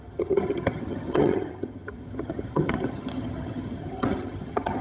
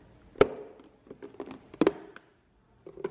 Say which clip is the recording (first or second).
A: second